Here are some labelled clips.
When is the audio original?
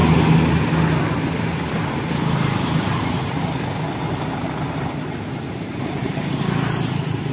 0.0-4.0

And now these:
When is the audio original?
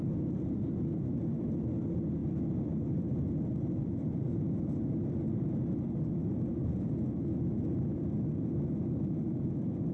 0.0-9.9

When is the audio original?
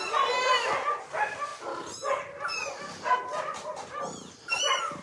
0.0-5.0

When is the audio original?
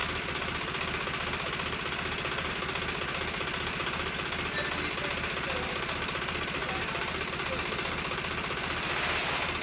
0.0-6.6; 7.3-9.6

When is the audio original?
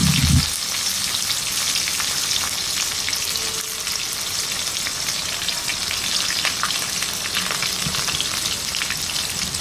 0.0-9.6